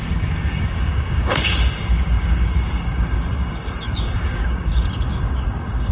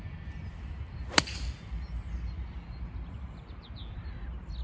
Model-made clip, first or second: first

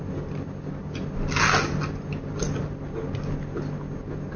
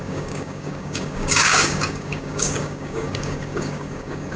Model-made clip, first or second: second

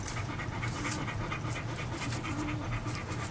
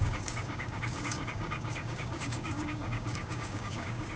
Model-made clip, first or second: second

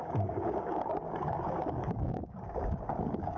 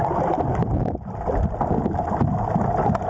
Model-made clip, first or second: first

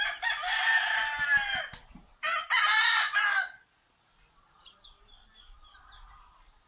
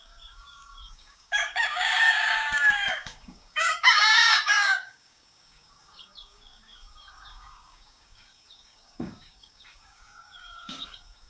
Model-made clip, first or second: second